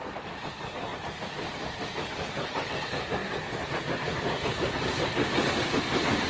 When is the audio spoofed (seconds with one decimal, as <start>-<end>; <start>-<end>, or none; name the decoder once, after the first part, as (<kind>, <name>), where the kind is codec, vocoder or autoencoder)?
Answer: 3.2-4.0 (vocoder, BigVGAN v2)